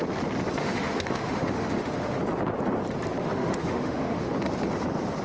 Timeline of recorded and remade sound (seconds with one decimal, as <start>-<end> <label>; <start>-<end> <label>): 0.0-0.6 recorded; 0.6-2.2 remade; 2.2-3.2 recorded; 3.2-4.3 remade; 4.3-5.2 recorded